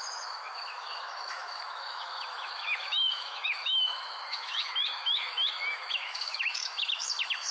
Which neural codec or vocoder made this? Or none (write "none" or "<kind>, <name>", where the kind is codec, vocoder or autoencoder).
autoencoder, DAC-VAE